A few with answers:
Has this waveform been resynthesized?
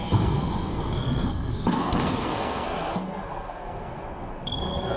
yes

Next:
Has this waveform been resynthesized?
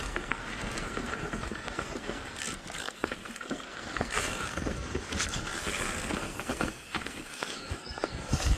yes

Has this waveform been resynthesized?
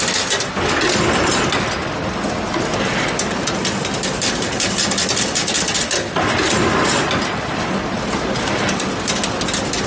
no